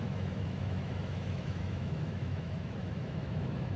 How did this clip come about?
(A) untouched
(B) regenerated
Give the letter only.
B